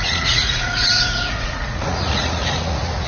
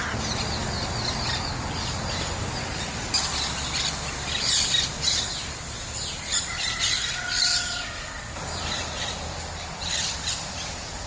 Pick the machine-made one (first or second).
first